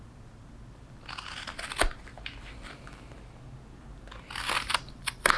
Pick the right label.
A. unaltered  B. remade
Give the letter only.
A